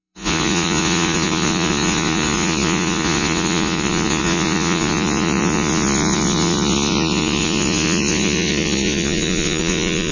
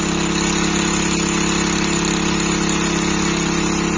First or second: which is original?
second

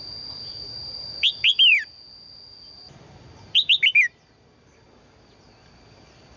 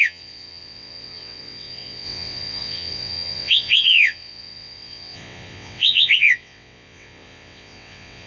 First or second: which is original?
first